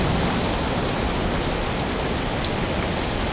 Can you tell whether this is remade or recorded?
recorded